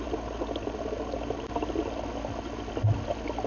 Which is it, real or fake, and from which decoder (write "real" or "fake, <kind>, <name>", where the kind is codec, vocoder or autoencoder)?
real